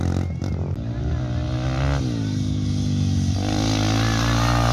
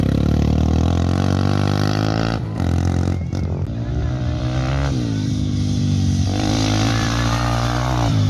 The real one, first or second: first